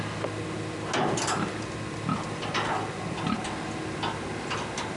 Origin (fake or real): real